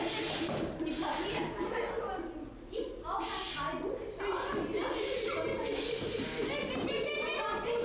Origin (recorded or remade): recorded